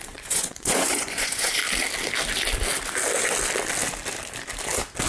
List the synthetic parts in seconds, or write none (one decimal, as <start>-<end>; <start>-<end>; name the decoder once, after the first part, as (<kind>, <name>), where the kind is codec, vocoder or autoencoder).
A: 0.0-1.6 (vocoder, Vocos)